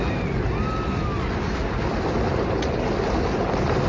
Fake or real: real